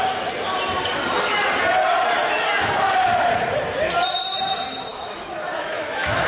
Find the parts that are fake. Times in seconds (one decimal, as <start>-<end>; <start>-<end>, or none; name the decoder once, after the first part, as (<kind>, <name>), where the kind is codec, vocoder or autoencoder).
4.9-6.3 (autoencoder, DAC-VAE)